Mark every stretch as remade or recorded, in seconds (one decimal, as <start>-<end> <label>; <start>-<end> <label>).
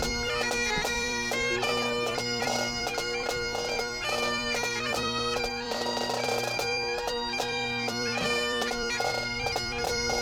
0.0-10.2 remade